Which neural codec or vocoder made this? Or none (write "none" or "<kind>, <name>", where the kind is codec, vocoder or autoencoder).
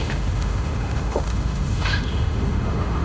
autoencoder, DAC-VAE